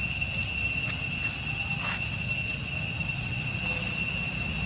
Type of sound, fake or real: real